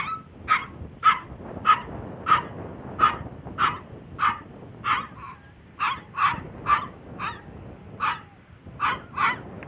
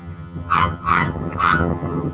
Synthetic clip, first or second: second